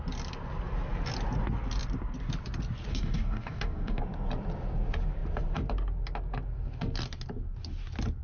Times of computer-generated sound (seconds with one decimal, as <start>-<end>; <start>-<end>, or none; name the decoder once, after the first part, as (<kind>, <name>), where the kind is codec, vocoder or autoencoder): 2.9-4.0 (codec, DAC)